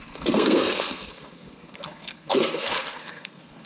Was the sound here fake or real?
fake